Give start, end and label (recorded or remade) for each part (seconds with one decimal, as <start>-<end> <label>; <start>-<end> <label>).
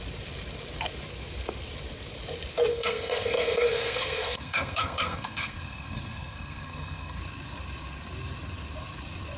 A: 0.0-2.7 recorded; 2.7-7.2 remade; 7.2-9.4 recorded